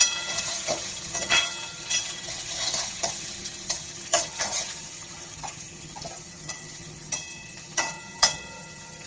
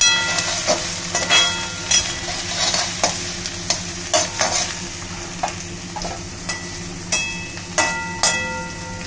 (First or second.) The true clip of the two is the second